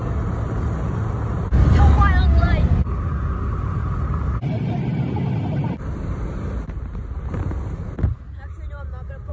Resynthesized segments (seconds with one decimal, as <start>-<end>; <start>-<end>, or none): none